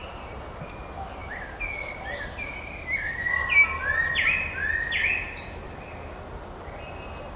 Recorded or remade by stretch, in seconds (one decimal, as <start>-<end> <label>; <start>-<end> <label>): 0.0-7.4 recorded